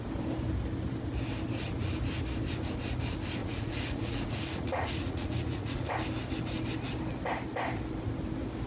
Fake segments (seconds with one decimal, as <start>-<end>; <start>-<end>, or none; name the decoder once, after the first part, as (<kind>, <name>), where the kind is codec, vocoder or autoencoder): 3.4-5.9 (vocoder, Vocos)

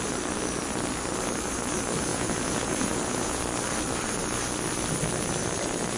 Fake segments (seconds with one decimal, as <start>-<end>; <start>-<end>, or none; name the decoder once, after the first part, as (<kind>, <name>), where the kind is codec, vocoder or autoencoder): 2.1-3.4 (vocoder, Vocos)

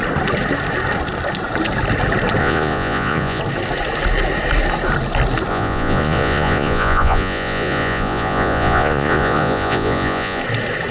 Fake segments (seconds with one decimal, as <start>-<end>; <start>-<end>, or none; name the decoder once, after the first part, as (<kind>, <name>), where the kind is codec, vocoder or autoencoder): 2.4-3.4 (vocoder, Vocos); 5.5-10.4

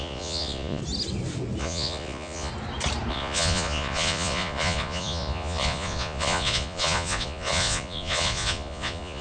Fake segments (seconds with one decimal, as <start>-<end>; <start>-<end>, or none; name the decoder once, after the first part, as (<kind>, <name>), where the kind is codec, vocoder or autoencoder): 0.0-0.8 (vocoder, Vocos); 1.6-2.5; 3.1-9.2

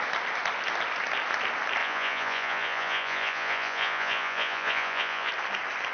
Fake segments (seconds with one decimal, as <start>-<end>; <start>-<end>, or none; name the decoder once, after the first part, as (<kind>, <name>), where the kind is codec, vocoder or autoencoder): 1.8-5.3 (vocoder, Vocos)

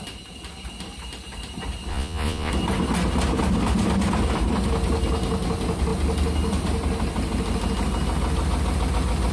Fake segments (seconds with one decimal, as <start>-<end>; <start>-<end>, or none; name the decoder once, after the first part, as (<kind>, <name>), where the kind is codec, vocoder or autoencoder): 1.9-2.5 (vocoder, Vocos)